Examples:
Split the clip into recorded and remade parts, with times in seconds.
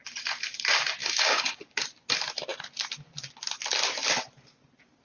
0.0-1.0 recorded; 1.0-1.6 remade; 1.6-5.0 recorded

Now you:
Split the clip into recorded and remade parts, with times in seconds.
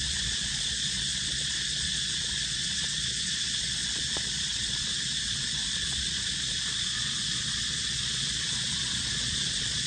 0.0-9.9 remade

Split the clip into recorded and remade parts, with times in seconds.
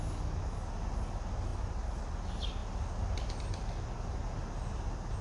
0.0-1.5 recorded; 1.5-2.2 remade; 2.2-5.2 recorded